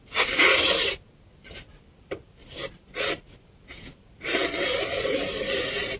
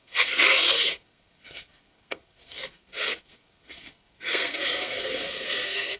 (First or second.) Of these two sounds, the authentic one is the first